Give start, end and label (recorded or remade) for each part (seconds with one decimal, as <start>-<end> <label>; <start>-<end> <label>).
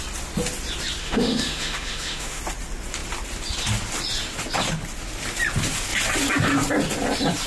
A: 0.0-1.0 recorded; 1.0-2.4 remade; 2.4-7.5 recorded